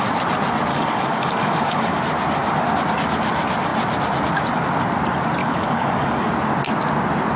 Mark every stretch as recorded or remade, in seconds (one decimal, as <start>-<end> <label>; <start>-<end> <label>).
0.0-0.7 recorded; 0.7-2.0 remade; 2.0-5.4 recorded; 5.4-6.3 remade; 6.3-7.4 recorded